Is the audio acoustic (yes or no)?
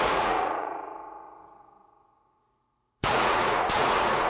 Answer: no